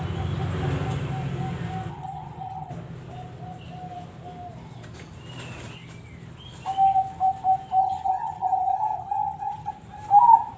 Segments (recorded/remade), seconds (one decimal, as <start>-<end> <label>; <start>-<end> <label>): 0.0-1.9 recorded; 1.9-2.7 remade; 2.7-7.8 recorded; 7.8-9.7 remade; 9.7-10.6 recorded